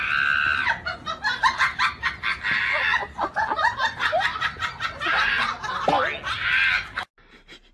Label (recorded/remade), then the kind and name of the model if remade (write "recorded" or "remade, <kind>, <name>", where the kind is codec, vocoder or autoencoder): recorded